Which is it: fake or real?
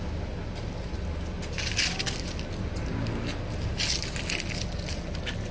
real